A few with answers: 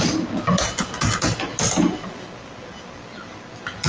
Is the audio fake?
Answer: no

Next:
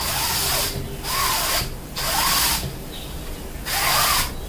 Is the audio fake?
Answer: no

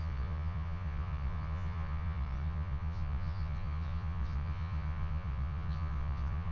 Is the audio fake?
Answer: yes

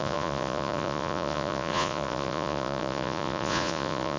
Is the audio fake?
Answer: yes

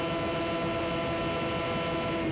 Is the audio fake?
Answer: no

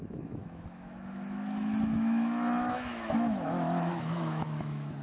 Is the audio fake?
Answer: yes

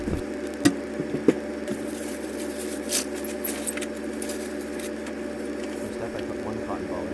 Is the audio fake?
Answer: no